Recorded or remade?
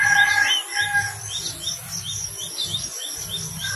recorded